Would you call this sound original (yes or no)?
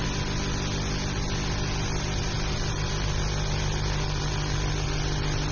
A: yes